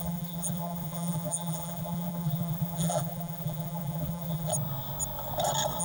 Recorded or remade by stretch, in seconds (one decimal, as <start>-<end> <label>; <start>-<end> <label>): 0.0-4.5 remade; 4.5-5.8 recorded